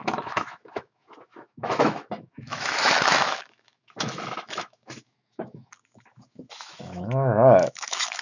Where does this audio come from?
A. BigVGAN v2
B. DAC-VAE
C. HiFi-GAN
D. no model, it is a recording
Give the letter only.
B